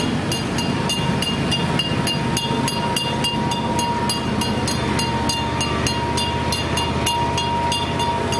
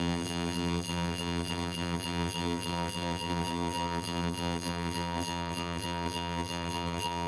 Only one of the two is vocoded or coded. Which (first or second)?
second